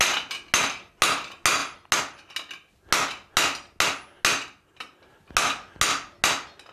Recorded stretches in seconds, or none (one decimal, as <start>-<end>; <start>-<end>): 0.0-6.7